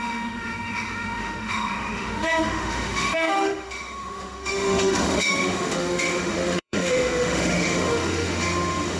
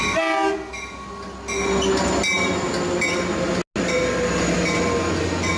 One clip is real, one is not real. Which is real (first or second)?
second